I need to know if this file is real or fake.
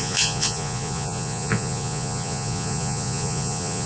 fake